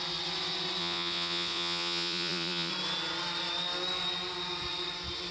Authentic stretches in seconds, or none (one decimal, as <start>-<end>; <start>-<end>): 0.0-0.8; 2.7-5.3